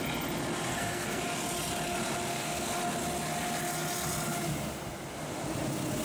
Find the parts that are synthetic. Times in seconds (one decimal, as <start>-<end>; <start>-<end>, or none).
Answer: 0.7-1.2; 2.3-2.8